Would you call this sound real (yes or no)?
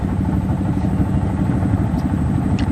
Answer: yes